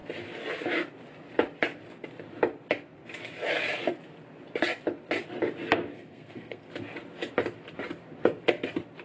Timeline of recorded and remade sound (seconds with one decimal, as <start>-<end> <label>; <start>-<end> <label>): 0.0-5.9 recorded; 5.9-6.7 remade; 6.7-9.0 recorded